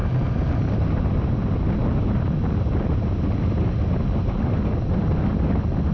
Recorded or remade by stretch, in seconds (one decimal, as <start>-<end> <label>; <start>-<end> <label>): 0.0-5.9 recorded